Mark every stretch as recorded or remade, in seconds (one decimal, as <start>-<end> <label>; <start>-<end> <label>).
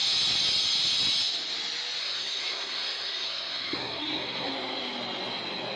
0.0-2.0 recorded; 2.0-4.5 remade; 4.5-5.8 recorded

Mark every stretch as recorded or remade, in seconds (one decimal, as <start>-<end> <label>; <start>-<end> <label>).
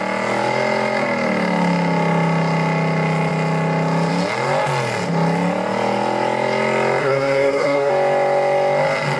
0.0-7.0 recorded; 7.0-7.9 remade; 7.9-9.2 recorded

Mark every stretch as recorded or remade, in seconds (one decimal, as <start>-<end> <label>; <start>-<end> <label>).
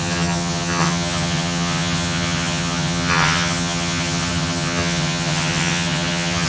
0.0-6.5 remade